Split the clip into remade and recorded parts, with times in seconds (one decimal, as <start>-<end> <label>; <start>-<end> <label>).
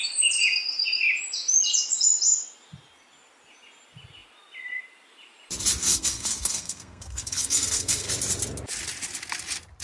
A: 0.0-5.8 recorded; 5.8-8.1 remade; 8.1-9.8 recorded